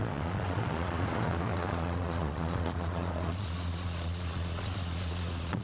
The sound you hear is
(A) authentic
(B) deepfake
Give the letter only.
B